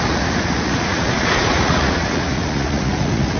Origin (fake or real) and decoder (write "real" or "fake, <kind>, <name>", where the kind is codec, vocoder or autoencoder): fake, vocoder, Vocos